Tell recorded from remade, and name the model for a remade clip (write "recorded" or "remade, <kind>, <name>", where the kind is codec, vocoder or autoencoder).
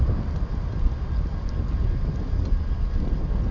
recorded